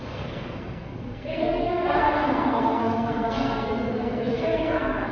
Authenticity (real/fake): fake